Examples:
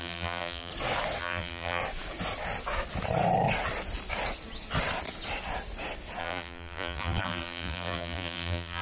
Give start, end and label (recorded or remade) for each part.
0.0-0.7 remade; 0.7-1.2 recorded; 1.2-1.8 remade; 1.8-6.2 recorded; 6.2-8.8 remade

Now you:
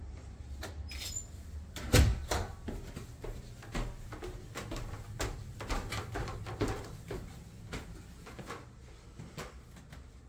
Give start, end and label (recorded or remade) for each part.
0.0-10.3 recorded

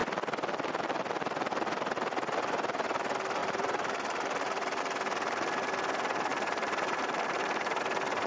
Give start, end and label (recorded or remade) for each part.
0.0-3.4 recorded; 3.4-4.8 remade; 4.8-6.3 recorded; 6.3-7.8 remade; 7.8-8.3 recorded